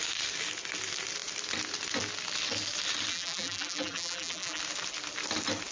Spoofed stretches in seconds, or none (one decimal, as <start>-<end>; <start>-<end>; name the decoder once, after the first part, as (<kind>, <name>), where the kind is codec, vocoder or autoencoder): 3.1-4.6 (vocoder, BigVGAN v2)